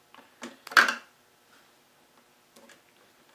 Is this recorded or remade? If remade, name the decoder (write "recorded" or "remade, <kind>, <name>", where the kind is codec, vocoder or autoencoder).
recorded